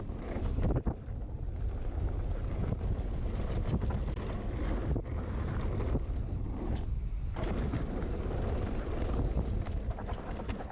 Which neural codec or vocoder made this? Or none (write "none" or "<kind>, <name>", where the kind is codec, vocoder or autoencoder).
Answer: none